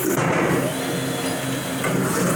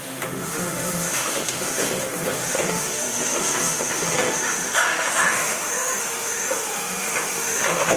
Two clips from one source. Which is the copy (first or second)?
second